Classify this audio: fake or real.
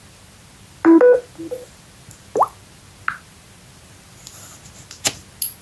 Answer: real